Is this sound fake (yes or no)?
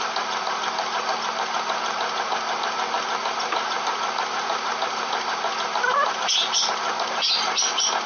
no